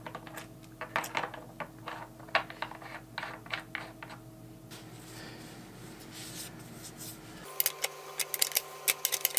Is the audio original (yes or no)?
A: yes